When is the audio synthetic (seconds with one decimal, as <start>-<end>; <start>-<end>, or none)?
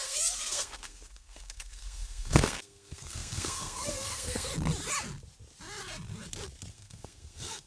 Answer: 0.0-4.5; 6.7-7.7